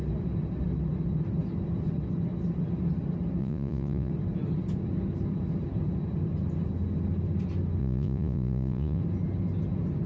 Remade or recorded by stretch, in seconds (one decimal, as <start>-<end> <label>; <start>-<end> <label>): 0.0-3.4 recorded; 3.4-4.1 remade; 4.1-7.8 recorded; 7.8-9.0 remade; 9.0-10.1 recorded